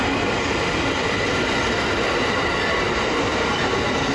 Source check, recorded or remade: recorded